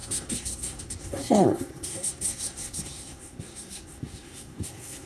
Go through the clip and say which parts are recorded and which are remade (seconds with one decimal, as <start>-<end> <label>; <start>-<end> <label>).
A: 0.0-5.1 remade